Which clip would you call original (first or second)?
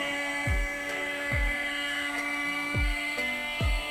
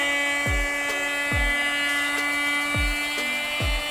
second